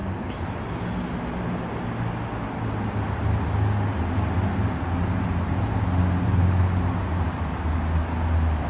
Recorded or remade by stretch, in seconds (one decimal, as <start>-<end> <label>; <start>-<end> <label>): 0.0-8.7 recorded